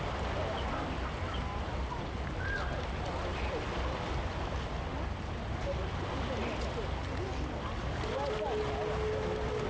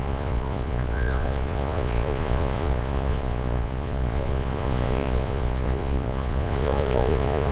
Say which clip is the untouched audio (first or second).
first